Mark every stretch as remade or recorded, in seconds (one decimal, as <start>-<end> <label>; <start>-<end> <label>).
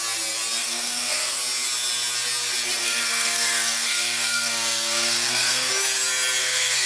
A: 0.0-0.6 recorded; 0.6-1.4 remade; 1.4-2.8 recorded; 2.8-5.7 remade; 5.7-6.4 recorded; 6.4-6.9 remade